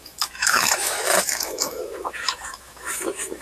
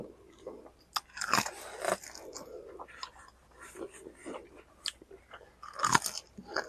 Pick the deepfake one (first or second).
first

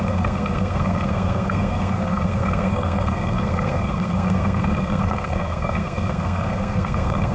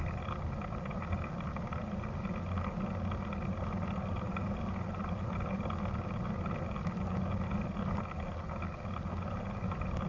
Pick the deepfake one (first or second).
first